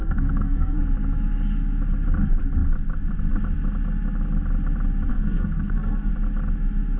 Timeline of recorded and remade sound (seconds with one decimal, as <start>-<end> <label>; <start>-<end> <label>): 0.0-0.8 remade; 0.8-5.1 recorded; 5.1-6.1 remade; 6.1-7.0 recorded